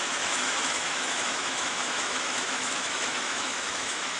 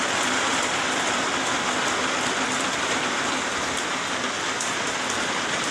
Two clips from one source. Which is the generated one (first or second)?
first